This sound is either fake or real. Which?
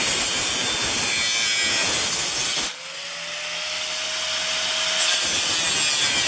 real